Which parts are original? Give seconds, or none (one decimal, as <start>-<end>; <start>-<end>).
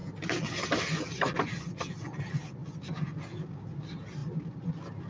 0.0-5.1